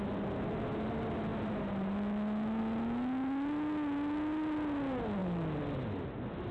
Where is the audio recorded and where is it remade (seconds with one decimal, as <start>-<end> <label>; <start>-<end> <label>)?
0.0-6.5 recorded